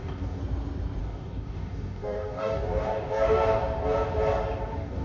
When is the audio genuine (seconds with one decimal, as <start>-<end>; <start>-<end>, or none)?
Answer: 0.4-1.0; 3.6-4.6